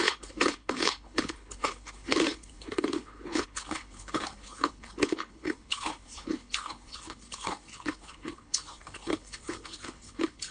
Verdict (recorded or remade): remade